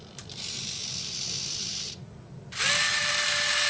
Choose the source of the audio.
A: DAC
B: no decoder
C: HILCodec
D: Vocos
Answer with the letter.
B